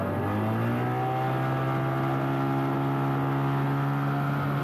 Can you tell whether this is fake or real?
real